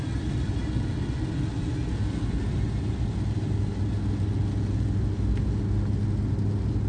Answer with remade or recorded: recorded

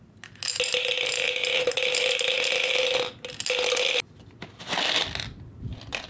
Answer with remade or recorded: recorded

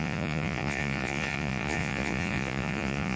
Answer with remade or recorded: remade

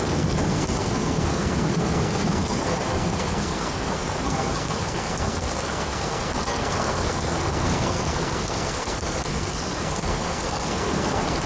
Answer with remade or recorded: remade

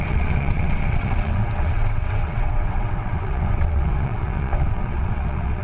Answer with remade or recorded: remade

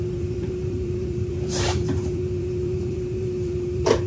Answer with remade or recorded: remade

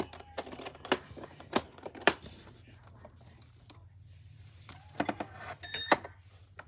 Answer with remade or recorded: recorded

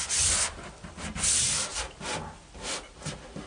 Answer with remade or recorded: recorded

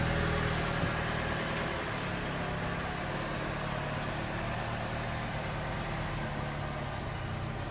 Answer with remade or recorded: recorded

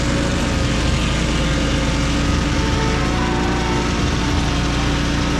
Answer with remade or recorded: recorded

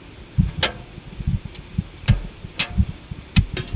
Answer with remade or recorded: recorded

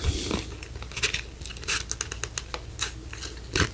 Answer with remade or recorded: recorded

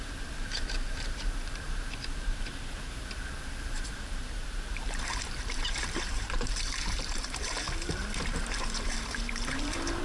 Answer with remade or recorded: remade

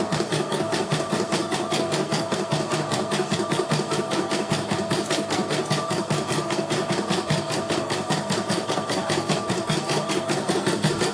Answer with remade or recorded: remade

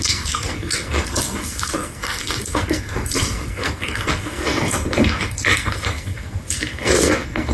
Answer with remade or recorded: remade